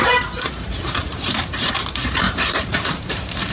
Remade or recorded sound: remade